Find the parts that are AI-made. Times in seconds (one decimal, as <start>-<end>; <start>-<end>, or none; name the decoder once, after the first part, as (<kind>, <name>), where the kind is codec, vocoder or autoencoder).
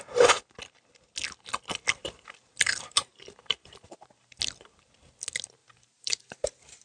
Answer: 2.0-4.4 (vocoder, BigVGAN v2); 5.6-6.8